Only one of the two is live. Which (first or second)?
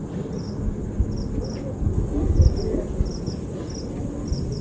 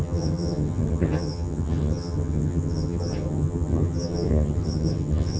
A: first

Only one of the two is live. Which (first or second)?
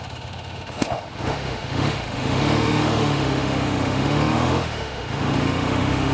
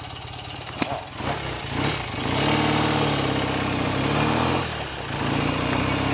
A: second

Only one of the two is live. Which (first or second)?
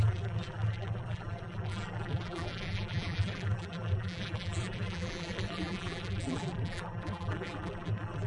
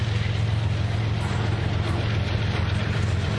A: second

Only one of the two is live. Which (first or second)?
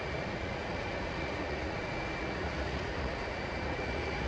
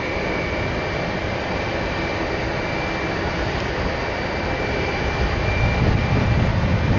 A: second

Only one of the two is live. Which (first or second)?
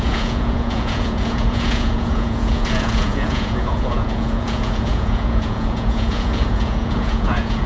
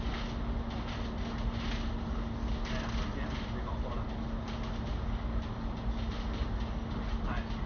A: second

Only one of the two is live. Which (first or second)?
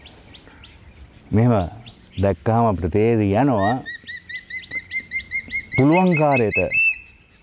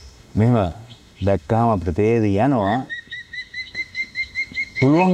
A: first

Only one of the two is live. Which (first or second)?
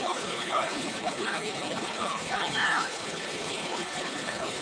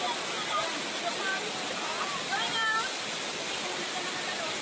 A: second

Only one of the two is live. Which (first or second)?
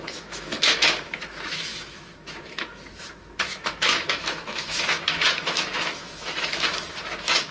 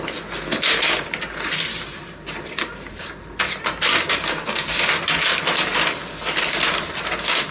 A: second